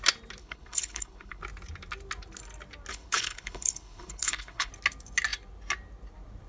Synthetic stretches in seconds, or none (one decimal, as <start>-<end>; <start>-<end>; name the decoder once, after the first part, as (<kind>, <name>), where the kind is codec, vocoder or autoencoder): 0.4-1.4 (codec, HILCodec); 2.9-4.7